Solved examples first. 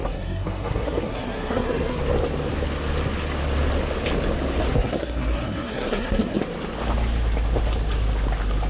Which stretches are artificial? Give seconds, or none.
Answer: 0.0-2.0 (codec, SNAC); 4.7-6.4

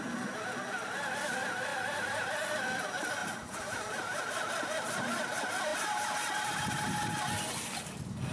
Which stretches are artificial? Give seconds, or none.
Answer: 1.7-2.3 (vocoder, BigVGAN v2); 3.2-4.2; 5.7-7.0

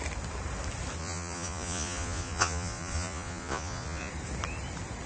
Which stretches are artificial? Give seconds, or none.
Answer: 1.0-4.1 (vocoder, Vocos)

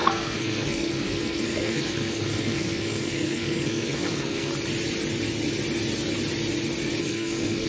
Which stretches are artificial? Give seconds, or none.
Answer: 0.0-4.5 (codec, SNAC); 7.0-7.7

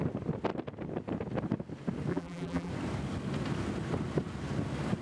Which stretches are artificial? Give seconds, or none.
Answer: 2.1-2.7 (vocoder, BigVGAN v2)

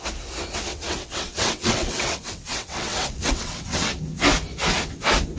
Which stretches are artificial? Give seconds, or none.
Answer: 0.7-3.9 (vocoder, WaveNeXt)

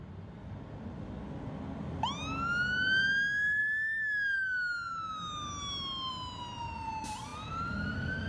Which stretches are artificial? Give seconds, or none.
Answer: none